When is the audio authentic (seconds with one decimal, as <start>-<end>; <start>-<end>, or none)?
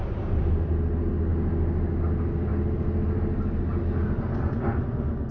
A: 0.0-5.3